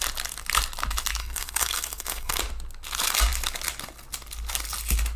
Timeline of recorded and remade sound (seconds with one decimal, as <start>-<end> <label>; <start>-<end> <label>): 0.0-1.2 recorded; 1.2-2.4 remade; 2.4-5.2 recorded